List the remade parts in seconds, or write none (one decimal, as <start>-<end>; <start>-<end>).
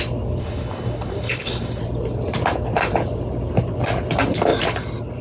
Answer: 0.4-1.8